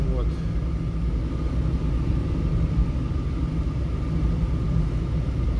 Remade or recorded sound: recorded